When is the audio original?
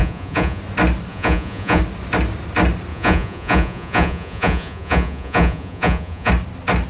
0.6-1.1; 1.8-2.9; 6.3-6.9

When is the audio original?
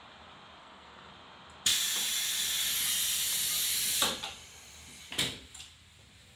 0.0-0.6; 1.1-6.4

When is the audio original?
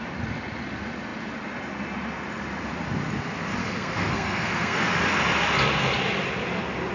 0.0-3.6; 4.9-6.9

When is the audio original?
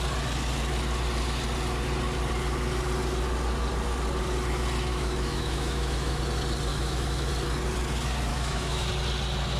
0.0-4.9; 6.2-6.7; 7.3-8.3; 8.9-9.6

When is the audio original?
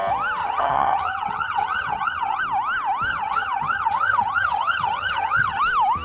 0.0-0.4; 2.4-3.1; 5.6-6.0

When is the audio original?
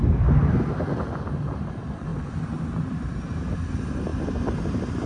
0.0-2.1; 3.2-5.1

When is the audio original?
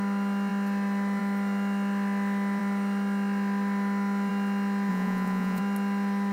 0.0-4.9; 5.6-6.3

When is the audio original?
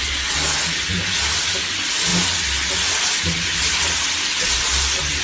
0.0-5.2